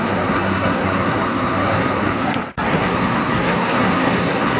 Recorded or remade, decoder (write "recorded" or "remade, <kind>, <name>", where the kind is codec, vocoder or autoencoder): remade, codec, SNAC